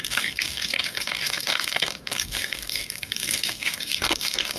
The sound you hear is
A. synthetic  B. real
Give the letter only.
A